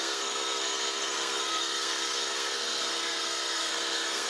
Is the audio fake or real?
fake